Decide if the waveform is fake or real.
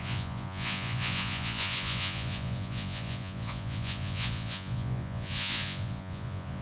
fake